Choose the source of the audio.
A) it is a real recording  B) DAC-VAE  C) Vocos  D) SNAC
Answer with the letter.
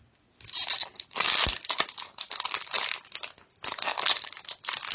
A